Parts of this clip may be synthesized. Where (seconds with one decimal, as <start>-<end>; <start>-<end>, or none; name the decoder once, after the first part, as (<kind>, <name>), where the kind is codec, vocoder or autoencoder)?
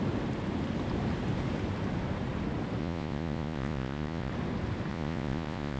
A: 2.8-4.3 (vocoder, Vocos); 4.9-5.8